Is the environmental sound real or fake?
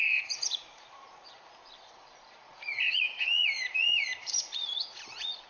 fake